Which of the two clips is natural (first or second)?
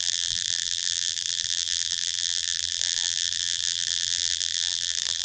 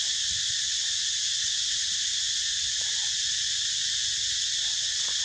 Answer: second